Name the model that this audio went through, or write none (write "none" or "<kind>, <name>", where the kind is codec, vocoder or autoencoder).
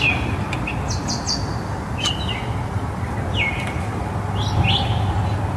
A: none